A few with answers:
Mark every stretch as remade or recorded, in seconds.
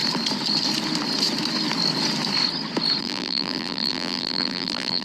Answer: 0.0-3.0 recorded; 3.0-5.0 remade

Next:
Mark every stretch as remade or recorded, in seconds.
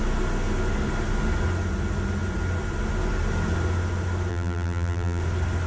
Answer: 0.0-4.3 recorded; 4.3-5.2 remade; 5.2-5.7 recorded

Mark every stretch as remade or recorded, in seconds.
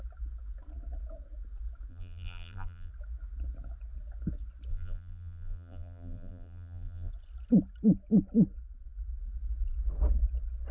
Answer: 0.0-1.9 recorded; 1.9-2.9 remade; 2.9-4.7 recorded; 4.7-7.1 remade; 7.1-10.7 recorded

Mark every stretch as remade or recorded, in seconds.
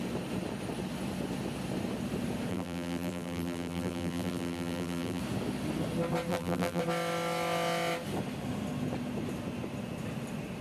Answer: 0.0-2.5 recorded; 2.5-5.2 remade; 5.2-6.3 recorded; 6.3-6.8 remade; 6.8-10.6 recorded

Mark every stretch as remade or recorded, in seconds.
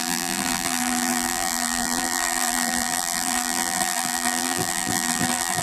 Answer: 0.0-5.6 remade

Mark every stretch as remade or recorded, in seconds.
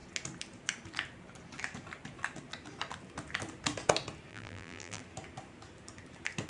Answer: 0.0-4.3 recorded; 4.3-5.0 remade; 5.0-6.5 recorded